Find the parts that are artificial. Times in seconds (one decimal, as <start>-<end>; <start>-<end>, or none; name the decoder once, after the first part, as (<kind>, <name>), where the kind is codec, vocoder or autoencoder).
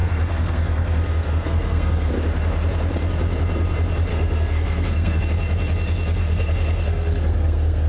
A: 0.0-2.1 (codec, SNAC); 4.1-5.2; 6.2-7.9